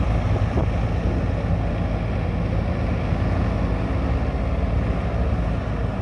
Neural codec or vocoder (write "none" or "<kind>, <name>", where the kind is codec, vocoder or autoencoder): none